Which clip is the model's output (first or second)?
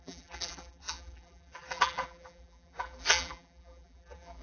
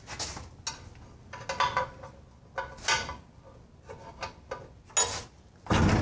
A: first